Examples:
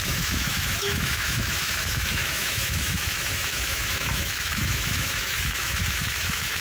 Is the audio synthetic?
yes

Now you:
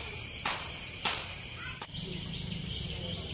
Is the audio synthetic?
yes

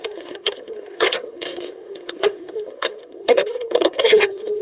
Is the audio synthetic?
yes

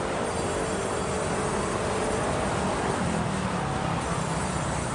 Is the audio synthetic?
no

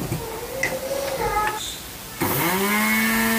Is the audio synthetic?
no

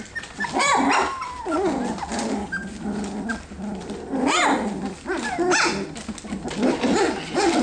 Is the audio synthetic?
no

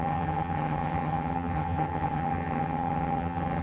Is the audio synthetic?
yes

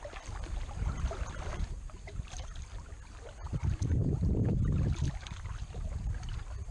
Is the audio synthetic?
yes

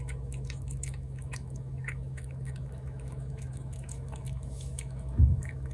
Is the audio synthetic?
yes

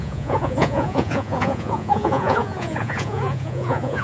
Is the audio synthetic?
yes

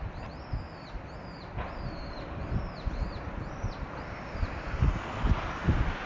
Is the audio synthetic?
no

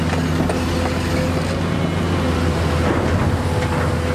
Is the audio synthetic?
no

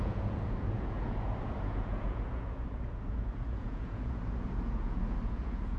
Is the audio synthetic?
yes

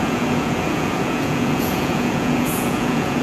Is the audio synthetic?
yes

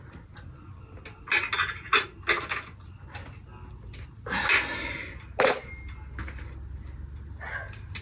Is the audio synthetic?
no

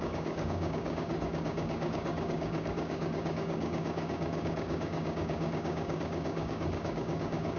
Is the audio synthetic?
yes